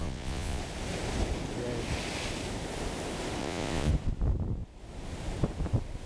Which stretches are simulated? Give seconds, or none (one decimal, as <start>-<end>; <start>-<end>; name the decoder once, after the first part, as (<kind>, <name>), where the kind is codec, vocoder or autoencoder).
0.0-0.6 (vocoder, Vocos); 3.4-3.9